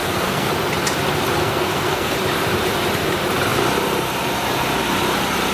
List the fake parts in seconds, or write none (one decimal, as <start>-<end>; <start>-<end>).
0.0-0.5; 1.4-2.2